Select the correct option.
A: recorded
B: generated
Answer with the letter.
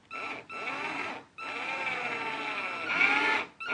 A